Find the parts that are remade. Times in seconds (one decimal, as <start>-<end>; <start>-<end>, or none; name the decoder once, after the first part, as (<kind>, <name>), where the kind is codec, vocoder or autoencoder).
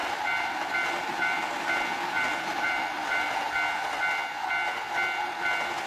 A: 0.0-3.5 (vocoder, BigVGAN v2)